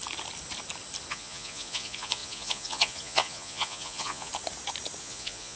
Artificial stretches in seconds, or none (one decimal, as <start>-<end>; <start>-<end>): 1.1-4.3; 5.0-5.6